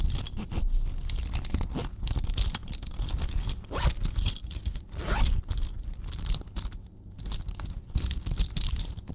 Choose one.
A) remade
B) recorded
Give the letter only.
B